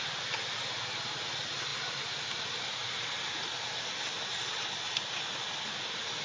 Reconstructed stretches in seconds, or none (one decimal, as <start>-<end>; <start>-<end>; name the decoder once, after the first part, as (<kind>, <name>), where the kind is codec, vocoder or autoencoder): none